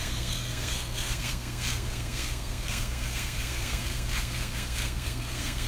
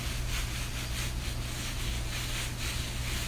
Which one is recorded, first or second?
second